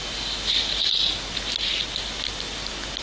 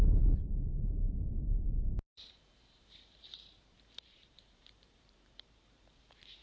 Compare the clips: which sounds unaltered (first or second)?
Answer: first